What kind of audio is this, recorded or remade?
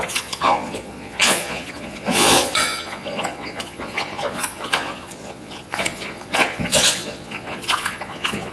remade